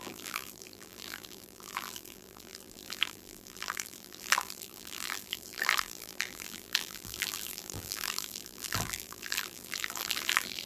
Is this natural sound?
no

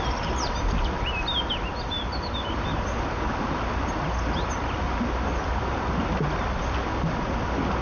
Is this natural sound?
yes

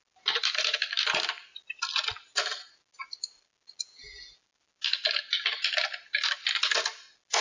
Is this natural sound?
yes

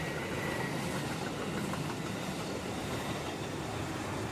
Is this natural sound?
yes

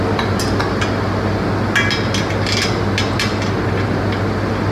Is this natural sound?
yes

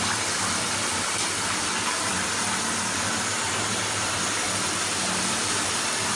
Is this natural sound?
yes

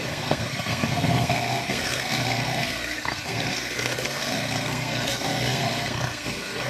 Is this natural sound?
no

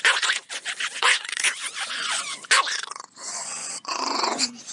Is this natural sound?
no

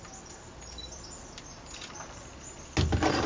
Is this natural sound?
yes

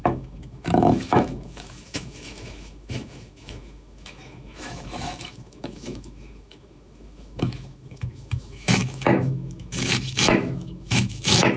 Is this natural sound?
no